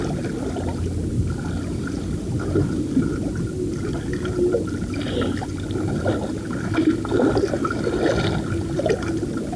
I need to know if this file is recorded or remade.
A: recorded